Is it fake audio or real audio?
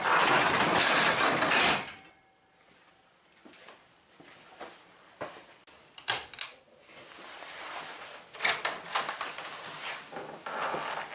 real